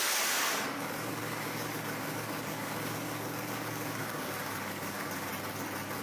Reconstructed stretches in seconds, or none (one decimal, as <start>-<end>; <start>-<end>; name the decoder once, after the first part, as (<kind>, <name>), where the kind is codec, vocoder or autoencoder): 0.0-5.3 (codec, DAC)